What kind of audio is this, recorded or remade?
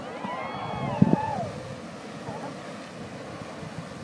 recorded